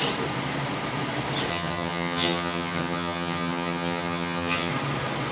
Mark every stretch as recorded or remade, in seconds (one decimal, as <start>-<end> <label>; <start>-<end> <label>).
0.0-1.5 recorded; 1.5-4.7 remade; 4.7-5.3 recorded

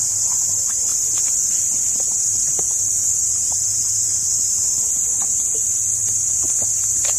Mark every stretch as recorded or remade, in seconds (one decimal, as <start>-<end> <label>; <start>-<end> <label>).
0.0-7.2 recorded

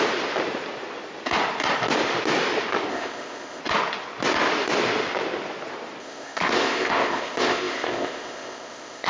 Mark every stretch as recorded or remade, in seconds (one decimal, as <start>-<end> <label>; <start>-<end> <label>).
0.0-2.9 recorded; 2.9-3.6 remade; 3.6-6.0 recorded; 6.0-9.1 remade

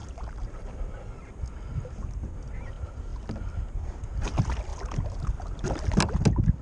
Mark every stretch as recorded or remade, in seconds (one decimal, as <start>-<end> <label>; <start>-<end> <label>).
0.0-0.7 remade; 0.7-6.6 recorded

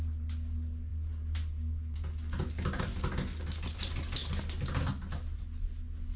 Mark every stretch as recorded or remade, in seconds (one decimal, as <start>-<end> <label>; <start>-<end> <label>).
0.0-6.2 recorded

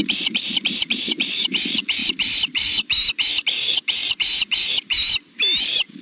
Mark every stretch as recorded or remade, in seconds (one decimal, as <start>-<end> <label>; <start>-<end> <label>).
0.0-6.0 recorded